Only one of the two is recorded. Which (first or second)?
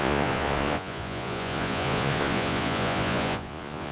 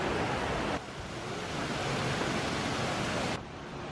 second